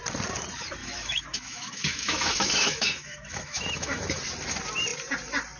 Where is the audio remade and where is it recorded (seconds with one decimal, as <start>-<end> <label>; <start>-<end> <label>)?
0.0-0.8 recorded; 0.8-4.1 remade; 4.1-5.6 recorded